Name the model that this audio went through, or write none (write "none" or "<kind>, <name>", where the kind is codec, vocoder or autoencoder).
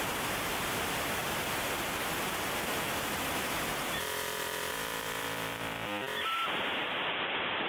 vocoder, BigVGAN v2